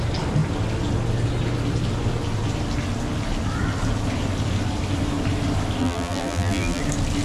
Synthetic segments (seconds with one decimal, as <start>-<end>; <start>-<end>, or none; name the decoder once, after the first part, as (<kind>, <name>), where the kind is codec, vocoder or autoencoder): 5.8-6.8 (vocoder, BigVGAN v2)